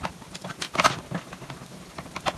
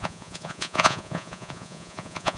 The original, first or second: first